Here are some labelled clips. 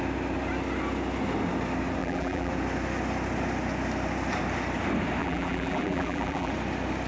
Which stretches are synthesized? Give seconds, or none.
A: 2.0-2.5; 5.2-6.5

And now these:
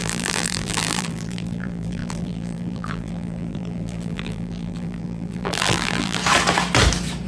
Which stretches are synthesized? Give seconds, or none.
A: 0.0-6.2